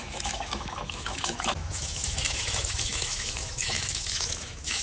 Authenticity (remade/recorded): remade